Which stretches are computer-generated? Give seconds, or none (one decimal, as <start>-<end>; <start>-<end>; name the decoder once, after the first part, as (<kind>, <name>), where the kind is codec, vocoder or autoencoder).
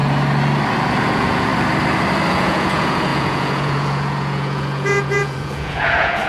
1.0-1.5 (vocoder, Vocos); 2.3-6.3